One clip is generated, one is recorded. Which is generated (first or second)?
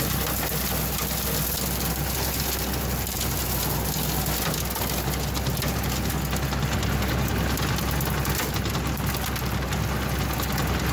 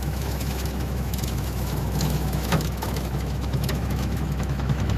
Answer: second